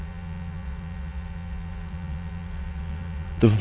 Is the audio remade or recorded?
remade